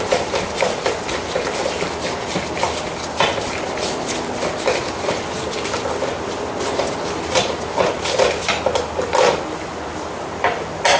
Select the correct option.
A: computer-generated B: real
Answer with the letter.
B